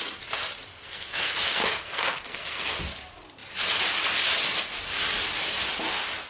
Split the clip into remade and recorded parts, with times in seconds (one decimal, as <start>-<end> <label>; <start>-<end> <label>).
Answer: 0.0-0.7 recorded; 0.7-2.8 remade; 2.8-6.3 recorded